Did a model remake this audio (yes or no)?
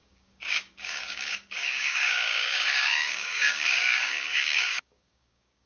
yes